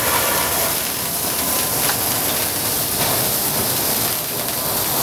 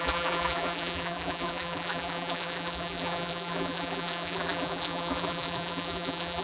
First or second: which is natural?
first